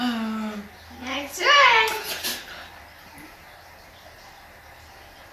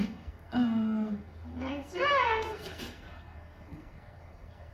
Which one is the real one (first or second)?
first